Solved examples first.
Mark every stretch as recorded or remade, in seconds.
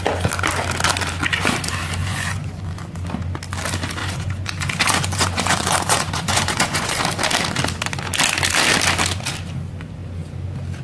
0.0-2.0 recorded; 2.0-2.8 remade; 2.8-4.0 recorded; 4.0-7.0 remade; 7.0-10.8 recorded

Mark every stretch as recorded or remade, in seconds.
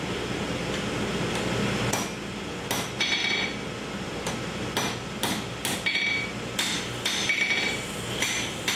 0.0-8.8 recorded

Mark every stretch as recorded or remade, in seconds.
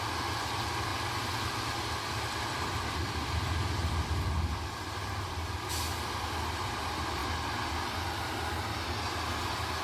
0.0-0.9 recorded; 0.9-5.7 remade; 5.7-7.2 recorded; 7.2-8.3 remade; 8.3-9.8 recorded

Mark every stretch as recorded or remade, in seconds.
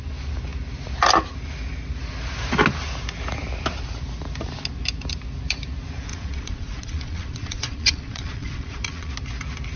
0.0-6.1 recorded; 6.1-9.1 remade; 9.1-9.8 recorded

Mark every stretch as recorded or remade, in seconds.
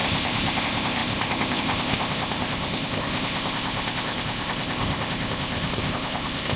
0.0-6.6 remade